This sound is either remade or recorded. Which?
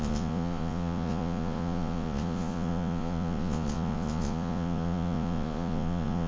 remade